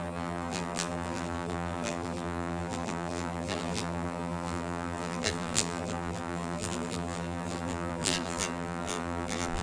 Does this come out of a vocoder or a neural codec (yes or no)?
yes